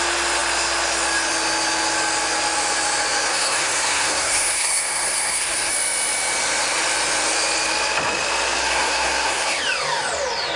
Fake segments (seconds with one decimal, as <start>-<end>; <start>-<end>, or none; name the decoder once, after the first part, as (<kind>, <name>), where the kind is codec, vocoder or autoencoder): 3.3-5.7 (codec, SNAC); 8.6-9.6